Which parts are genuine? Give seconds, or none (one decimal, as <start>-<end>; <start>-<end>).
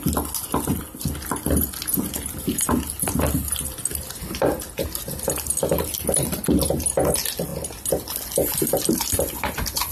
0.0-9.9